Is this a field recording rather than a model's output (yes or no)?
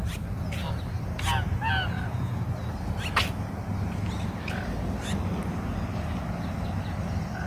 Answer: yes